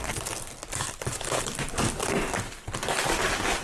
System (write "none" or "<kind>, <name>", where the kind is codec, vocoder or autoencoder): vocoder, BigVGAN v2